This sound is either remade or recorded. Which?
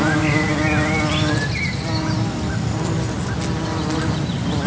recorded